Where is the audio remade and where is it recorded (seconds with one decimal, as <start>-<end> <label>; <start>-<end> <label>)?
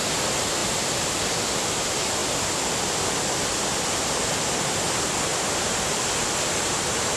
0.0-0.6 recorded; 0.6-1.1 remade; 1.1-2.2 recorded; 2.2-3.0 remade; 3.0-5.3 recorded; 5.3-6.6 remade; 6.6-7.2 recorded